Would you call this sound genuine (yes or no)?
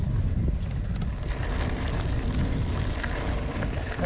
yes